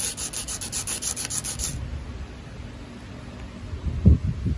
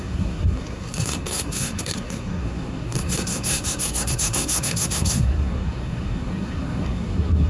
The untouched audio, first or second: first